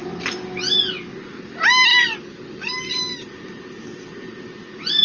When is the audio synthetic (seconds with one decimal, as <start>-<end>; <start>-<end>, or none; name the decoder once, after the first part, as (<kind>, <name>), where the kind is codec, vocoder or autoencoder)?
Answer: 0.0-0.6 (vocoder, BigVGAN v2); 1.1-3.6